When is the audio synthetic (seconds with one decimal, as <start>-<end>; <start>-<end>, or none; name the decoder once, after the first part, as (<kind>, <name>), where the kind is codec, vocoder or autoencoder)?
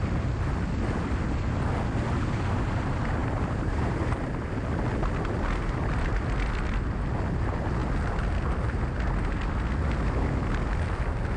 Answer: 3.2-4.5 (vocoder, BigVGAN v2)